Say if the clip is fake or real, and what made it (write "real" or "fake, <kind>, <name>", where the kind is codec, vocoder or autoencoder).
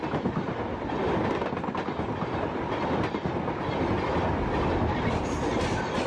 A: real